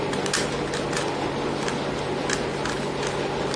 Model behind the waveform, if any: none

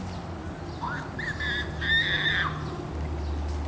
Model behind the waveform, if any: none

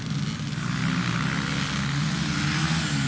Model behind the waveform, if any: none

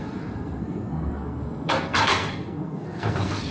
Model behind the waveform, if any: codec, SNAC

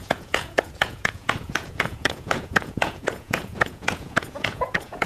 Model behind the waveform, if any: vocoder, Vocos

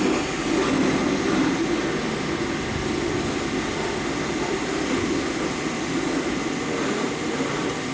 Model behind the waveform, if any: none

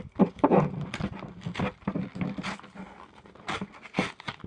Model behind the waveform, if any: none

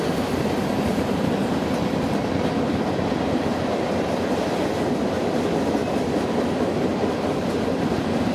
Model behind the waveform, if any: none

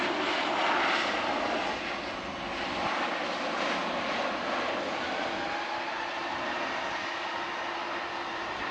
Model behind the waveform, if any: none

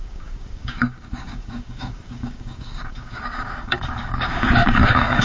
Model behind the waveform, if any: codec, DAC